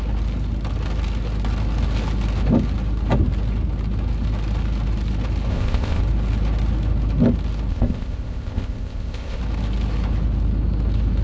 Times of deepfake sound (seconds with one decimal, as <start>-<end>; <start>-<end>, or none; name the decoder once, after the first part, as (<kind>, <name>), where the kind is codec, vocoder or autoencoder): 5.5-6.0 (codec, ZipCodec); 7.7-9.4